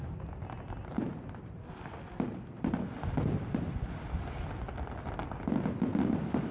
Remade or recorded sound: recorded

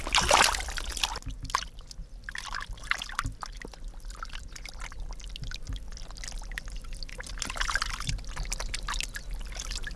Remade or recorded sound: recorded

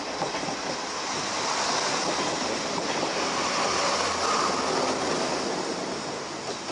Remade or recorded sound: recorded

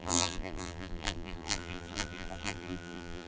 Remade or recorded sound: remade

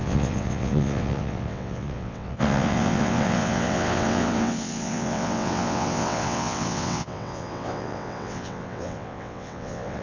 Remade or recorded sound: remade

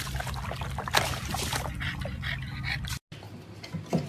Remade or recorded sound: recorded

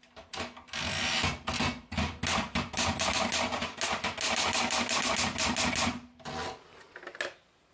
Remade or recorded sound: recorded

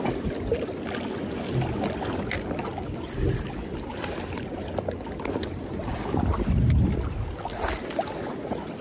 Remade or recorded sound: recorded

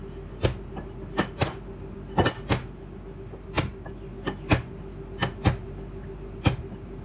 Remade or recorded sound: recorded